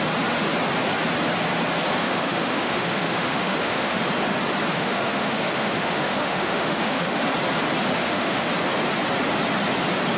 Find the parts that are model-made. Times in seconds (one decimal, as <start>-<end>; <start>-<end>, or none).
2.0-4.0; 4.7-7.2; 8.0-8.5